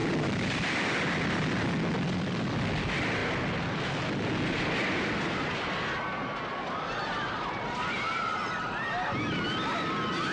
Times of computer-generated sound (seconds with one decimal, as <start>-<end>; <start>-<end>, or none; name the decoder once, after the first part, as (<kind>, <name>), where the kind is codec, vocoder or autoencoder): 0.0-3.2 (vocoder, BigVGAN v2); 4.5-10.3